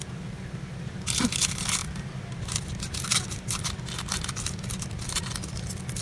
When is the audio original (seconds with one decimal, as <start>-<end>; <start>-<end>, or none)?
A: 0.0-6.0